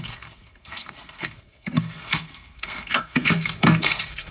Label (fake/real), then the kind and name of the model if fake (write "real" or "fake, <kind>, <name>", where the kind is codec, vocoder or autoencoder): fake, codec, SNAC